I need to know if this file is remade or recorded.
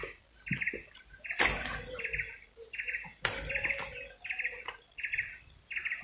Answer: recorded